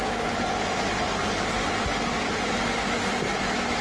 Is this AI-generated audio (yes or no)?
no